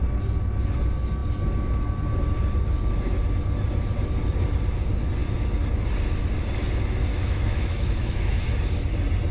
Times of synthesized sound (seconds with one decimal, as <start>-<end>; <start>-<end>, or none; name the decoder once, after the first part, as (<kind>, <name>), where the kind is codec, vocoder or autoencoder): 7.1-8.5 (autoencoder, DAC-VAE)